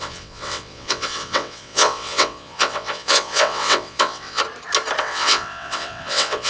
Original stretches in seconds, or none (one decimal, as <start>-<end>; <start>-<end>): 4.4-5.0